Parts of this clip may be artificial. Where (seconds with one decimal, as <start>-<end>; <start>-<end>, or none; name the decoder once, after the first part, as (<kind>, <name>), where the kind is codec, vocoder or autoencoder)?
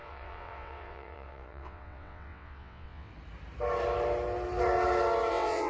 0.0-3.1 (vocoder, WaveNeXt); 5.3-5.7